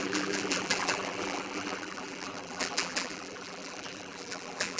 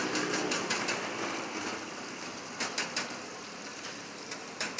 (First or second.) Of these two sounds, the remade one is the first